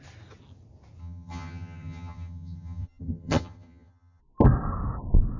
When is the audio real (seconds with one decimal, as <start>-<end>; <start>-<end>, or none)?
0.0-1.0; 4.2-5.4